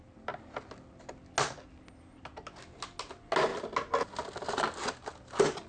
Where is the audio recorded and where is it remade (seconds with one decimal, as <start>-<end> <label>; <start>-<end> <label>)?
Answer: 0.0-5.7 recorded